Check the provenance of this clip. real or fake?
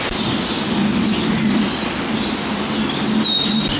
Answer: real